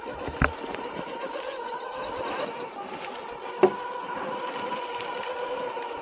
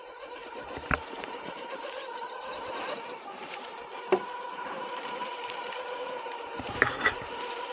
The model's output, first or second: second